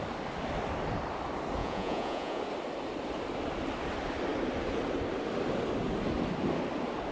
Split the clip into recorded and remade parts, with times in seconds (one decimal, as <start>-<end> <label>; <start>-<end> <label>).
0.0-1.6 recorded; 1.6-2.4 remade; 2.4-7.1 recorded